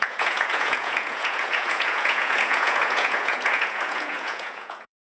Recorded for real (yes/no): no